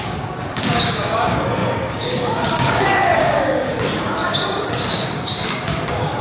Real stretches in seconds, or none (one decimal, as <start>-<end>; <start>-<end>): none